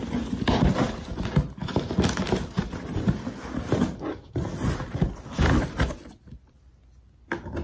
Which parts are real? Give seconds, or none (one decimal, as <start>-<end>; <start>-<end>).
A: 0.0-7.6